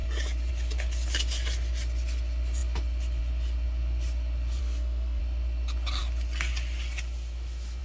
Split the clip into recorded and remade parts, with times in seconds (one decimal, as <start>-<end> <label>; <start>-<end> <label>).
0.0-4.6 recorded; 4.6-5.2 remade; 5.2-7.8 recorded